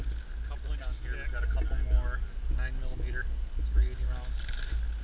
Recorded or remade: recorded